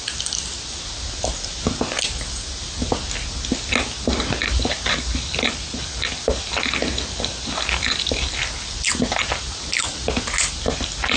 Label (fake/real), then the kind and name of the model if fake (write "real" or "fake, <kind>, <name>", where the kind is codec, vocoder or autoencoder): real